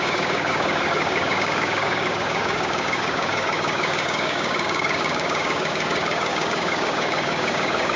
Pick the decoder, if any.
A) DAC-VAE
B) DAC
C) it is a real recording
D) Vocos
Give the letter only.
B